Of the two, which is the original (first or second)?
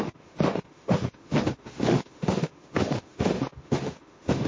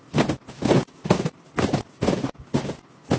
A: second